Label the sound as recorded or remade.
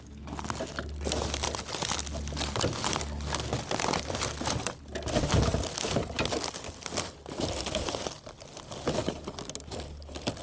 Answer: recorded